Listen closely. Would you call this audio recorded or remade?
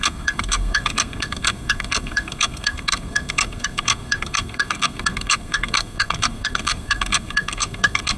remade